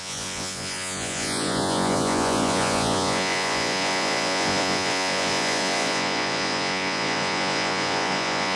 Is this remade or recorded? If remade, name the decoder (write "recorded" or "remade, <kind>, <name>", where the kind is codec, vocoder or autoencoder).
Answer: remade, vocoder, Vocos